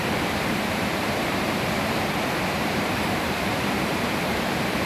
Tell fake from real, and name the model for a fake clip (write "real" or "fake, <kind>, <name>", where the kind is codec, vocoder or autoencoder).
fake, vocoder, BigVGAN v2